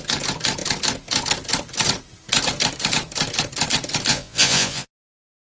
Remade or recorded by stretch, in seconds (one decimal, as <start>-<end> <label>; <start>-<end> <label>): 0.0-4.1 recorded; 4.1-4.9 remade; 4.9-5.5 recorded